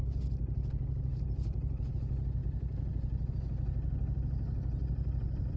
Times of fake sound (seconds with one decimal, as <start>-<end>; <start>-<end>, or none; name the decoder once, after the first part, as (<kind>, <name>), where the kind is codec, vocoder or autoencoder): none